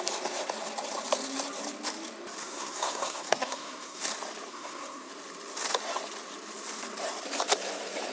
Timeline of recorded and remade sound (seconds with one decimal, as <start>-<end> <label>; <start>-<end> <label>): 0.0-2.4 recorded; 2.4-4.0 remade; 4.0-4.5 recorded; 4.5-5.1 remade; 5.1-8.1 recorded